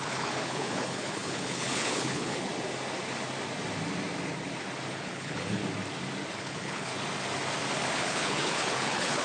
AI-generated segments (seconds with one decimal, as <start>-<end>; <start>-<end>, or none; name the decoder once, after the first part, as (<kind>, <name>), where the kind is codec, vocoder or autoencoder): 0.0-2.5 (codec, HILCodec); 4.9-5.6; 6.4-6.9; 7.9-9.2

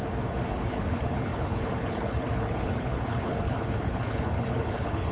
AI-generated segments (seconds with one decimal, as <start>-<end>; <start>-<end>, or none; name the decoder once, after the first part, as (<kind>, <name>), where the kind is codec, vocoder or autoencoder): 0.5-5.1 (codec, HILCodec)